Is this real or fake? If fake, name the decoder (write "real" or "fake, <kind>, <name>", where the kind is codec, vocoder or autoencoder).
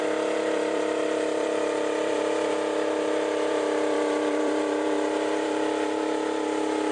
fake, vocoder, BigVGAN v2